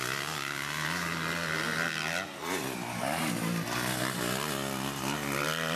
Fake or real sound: real